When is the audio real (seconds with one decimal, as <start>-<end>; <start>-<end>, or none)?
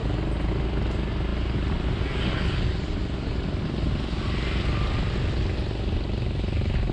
0.0-6.9